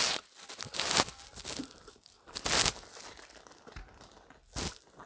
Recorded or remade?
recorded